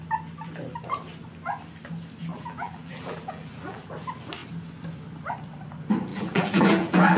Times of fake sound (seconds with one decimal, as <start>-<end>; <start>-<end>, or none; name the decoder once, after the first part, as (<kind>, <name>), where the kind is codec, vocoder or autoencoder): 2.3-3.9 (vocoder, BigVGAN v2); 6.1-7.2